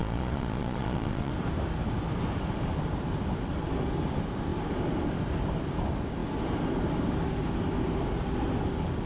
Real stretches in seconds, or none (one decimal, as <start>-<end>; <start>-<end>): 1.3-9.1